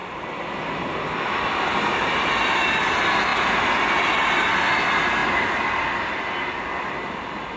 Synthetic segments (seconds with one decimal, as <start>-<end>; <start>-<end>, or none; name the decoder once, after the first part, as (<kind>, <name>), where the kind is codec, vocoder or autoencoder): none